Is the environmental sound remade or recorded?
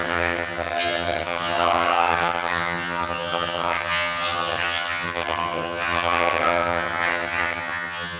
remade